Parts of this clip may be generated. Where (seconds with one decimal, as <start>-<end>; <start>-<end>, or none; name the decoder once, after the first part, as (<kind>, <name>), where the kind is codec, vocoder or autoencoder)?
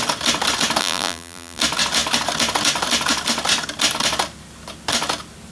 0.8-1.6 (vocoder, BigVGAN v2)